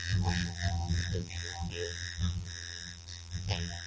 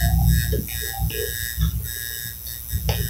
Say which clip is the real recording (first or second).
second